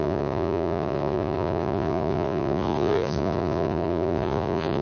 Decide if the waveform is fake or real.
fake